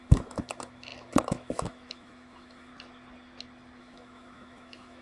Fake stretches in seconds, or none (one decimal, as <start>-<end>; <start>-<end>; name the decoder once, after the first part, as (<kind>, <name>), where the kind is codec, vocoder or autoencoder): 0.0-2.7 (autoencoder, DAC-VAE); 3.8-5.0